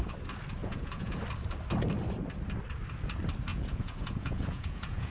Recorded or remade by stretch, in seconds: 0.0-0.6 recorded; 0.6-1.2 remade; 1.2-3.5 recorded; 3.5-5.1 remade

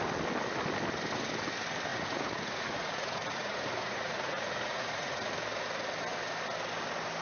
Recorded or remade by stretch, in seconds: 0.0-1.9 recorded; 1.9-5.3 remade; 5.3-7.2 recorded